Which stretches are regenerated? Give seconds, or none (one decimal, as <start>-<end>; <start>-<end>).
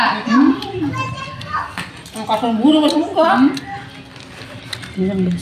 1.2-1.9